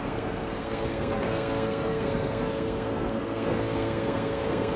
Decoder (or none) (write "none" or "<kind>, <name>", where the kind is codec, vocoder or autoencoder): codec, SNAC